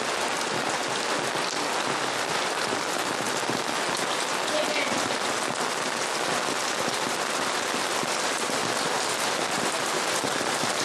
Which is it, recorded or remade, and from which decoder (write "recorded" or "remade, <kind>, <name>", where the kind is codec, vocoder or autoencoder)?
recorded